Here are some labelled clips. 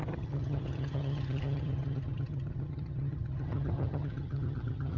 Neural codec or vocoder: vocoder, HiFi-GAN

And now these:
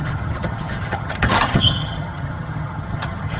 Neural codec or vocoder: vocoder, HiFi-GAN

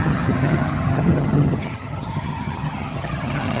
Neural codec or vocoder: vocoder, HiFi-GAN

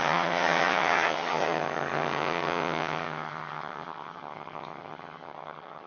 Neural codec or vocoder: vocoder, HiFi-GAN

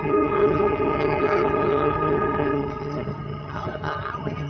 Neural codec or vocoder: vocoder, HiFi-GAN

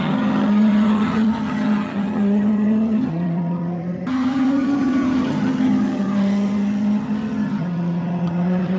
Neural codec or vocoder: vocoder, HiFi-GAN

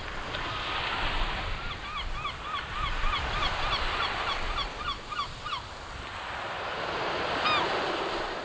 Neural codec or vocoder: none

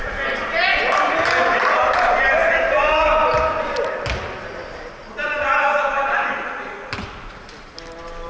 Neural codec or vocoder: none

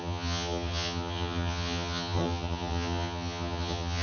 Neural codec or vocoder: vocoder, HiFi-GAN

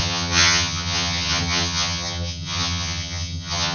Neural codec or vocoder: vocoder, HiFi-GAN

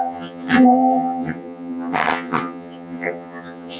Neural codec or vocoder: vocoder, HiFi-GAN